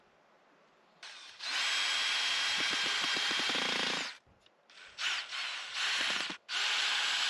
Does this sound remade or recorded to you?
recorded